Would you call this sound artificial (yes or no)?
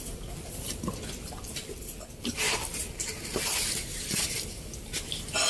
no